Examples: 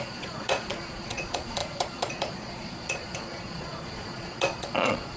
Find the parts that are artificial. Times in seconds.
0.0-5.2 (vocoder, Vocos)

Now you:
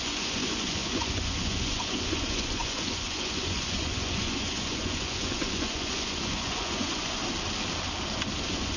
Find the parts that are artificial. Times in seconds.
0.0-7.2 (vocoder, Vocos); 8.4-8.8